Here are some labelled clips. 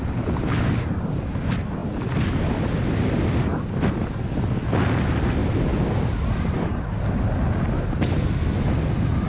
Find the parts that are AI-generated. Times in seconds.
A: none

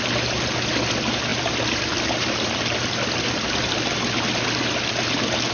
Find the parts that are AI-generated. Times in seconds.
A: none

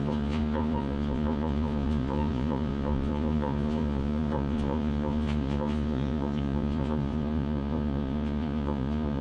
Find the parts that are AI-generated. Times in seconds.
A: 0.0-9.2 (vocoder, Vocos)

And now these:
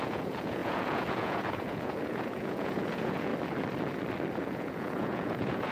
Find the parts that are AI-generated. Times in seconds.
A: 0.0-3.3 (vocoder, Vocos); 4.4-5.7

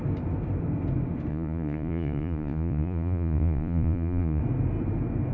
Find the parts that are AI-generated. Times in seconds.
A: 1.3-4.4 (vocoder, Vocos)

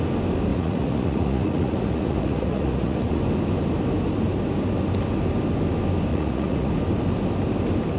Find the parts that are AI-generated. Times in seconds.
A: 0.5-3.2 (vocoder, Vocos); 6.1-6.7

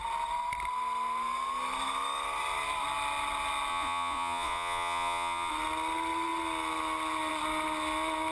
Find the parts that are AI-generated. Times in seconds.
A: 3.7-5.5 (vocoder, Vocos)